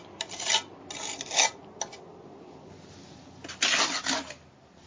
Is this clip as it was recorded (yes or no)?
yes